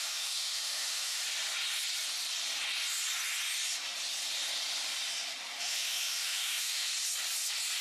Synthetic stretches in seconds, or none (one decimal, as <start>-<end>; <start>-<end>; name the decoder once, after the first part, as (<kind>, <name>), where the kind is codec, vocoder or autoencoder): 0.0-1.2 (autoencoder, DAC-VAE); 5.6-6.9